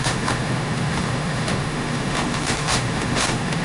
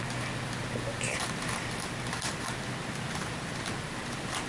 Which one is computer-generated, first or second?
first